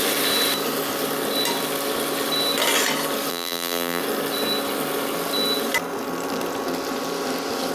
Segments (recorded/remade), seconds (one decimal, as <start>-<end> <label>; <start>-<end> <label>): 0.0-3.3 recorded; 3.3-4.0 remade; 4.0-7.7 recorded